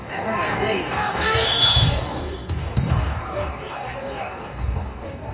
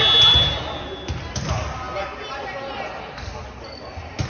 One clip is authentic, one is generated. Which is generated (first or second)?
first